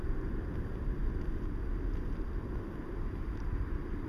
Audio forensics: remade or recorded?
recorded